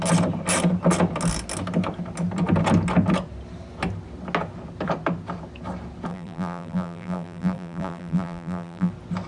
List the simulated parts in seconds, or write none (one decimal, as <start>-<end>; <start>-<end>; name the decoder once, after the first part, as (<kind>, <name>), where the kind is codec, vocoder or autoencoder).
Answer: 6.1-8.9 (vocoder, BigVGAN v2)